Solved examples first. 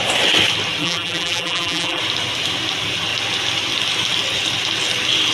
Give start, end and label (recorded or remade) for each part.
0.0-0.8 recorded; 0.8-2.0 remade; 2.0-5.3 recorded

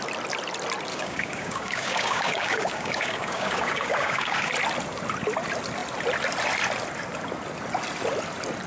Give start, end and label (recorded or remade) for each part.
0.0-0.9 recorded; 0.9-4.5 remade; 4.5-8.7 recorded

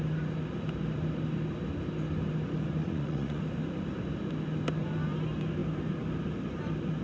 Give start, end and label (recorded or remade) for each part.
0.0-2.8 recorded; 2.8-3.4 remade; 3.4-7.0 recorded

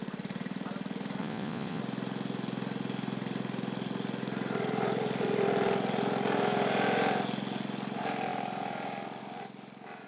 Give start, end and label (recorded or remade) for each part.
0.0-1.2 recorded; 1.2-1.8 remade; 1.8-10.1 recorded

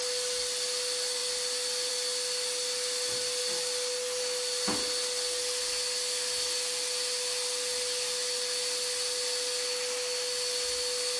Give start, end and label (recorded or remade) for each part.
0.0-11.2 recorded

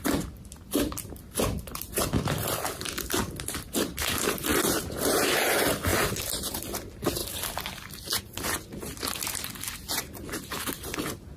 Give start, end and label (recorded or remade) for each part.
0.0-4.5 recorded; 4.5-5.3 remade; 5.3-7.2 recorded; 7.2-8.2 remade; 8.2-11.4 recorded

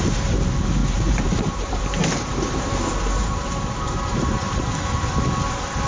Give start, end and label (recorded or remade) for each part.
0.0-0.8 recorded; 0.8-2.7 remade; 2.7-3.2 recorded; 3.2-4.8 remade; 4.8-5.9 recorded